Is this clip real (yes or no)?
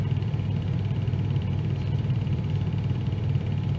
no